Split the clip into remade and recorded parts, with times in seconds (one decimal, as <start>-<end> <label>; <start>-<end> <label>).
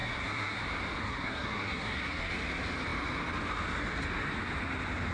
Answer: 0.0-0.6 remade; 0.6-1.0 recorded; 1.0-2.3 remade; 2.3-5.1 recorded